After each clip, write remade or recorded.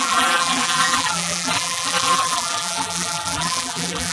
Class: remade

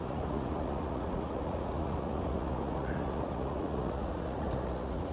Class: remade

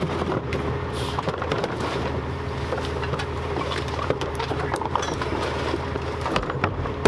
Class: remade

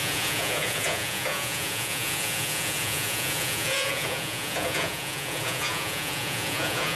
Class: remade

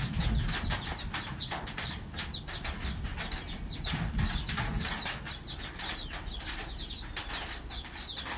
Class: recorded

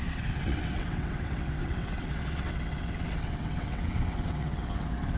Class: remade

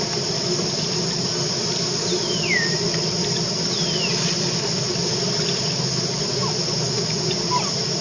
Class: recorded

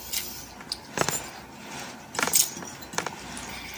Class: recorded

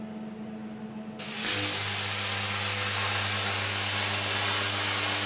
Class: recorded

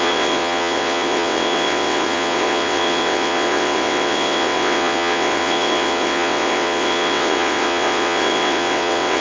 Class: remade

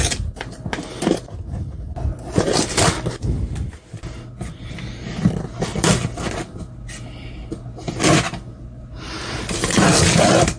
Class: recorded